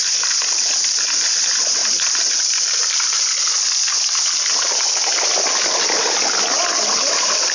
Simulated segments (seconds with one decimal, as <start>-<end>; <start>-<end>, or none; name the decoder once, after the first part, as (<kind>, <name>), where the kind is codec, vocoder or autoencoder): 0.0-1.1 (vocoder, BigVGAN v2); 1.8-6.3